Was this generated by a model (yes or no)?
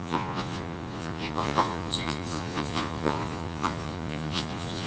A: yes